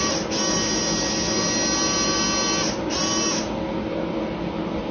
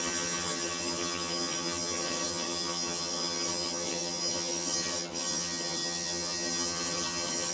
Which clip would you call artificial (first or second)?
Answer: second